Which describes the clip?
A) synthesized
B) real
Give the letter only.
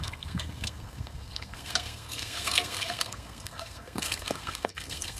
A